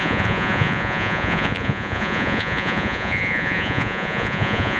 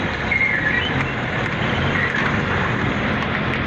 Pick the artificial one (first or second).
first